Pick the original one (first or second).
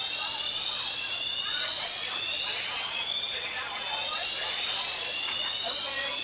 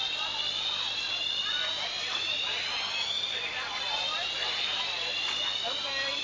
second